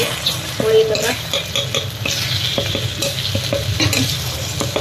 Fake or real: real